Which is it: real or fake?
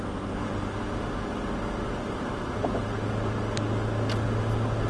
real